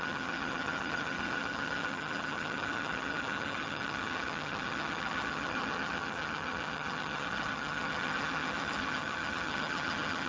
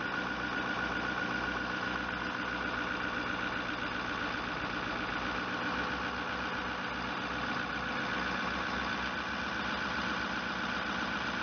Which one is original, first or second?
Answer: second